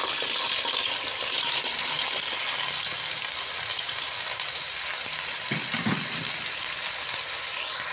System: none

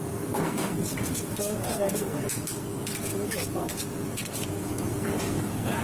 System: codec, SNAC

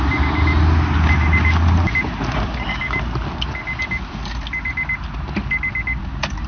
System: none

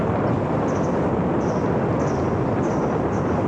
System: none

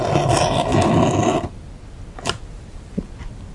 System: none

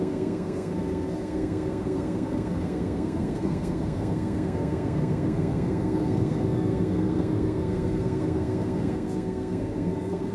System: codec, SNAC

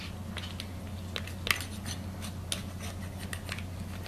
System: none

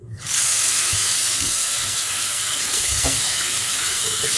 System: codec, SNAC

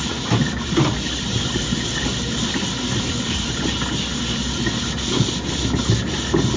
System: none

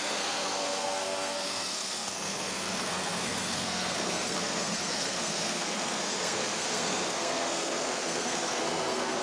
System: codec, SNAC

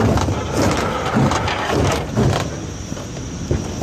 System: none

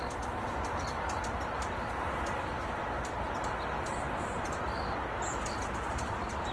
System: none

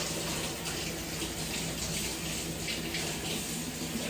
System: none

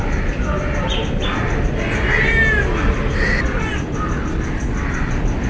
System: none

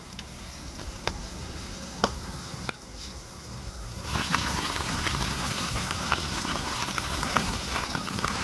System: codec, SNAC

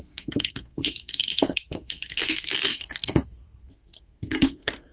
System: codec, SNAC